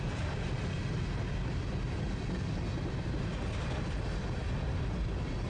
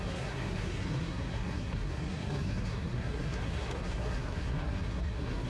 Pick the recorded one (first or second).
first